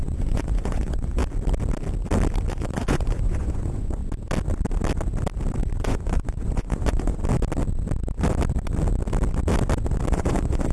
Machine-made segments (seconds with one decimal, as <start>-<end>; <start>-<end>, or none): 0.0-1.2; 2.5-4.0; 5.8-7.2; 10.1-10.7